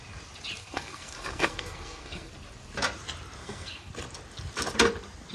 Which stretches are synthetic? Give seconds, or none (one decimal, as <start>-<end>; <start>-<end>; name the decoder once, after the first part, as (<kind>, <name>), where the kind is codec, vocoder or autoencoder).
0.6-2.3 (codec, SNAC); 3.4-3.9